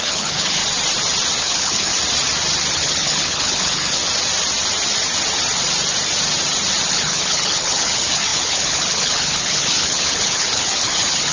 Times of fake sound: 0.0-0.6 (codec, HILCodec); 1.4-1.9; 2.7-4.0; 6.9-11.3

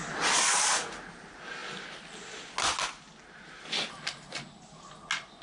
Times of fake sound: none

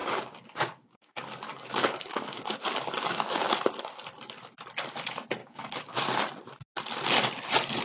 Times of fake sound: 0.0-3.7 (codec, DAC); 5.4-6.2

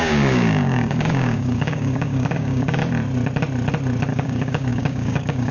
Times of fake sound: 0.0-2.8 (codec, DAC); 4.1-5.5

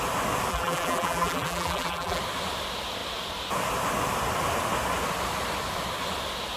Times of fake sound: 0.5-2.2 (vocoder, BigVGAN v2)

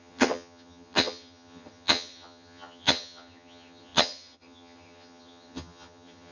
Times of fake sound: 0.0-6.3 (vocoder, HiFi-GAN)